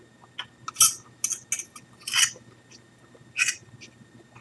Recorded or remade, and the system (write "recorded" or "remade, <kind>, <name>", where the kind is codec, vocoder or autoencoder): recorded